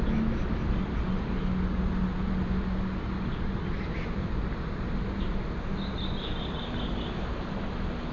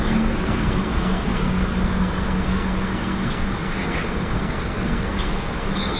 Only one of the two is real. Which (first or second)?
first